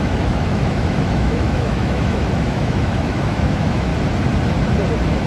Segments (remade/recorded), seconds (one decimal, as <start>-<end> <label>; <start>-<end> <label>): 0.0-3.9 remade; 3.9-5.3 recorded